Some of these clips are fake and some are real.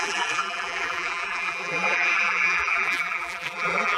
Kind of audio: fake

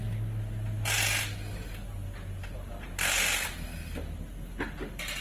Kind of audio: real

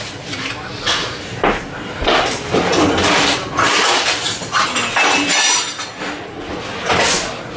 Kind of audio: real